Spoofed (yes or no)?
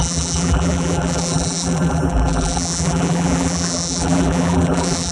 yes